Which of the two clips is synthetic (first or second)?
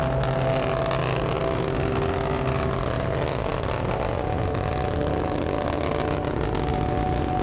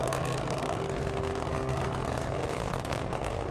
second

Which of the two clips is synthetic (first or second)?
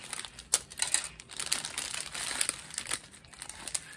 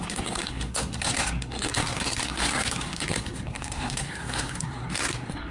second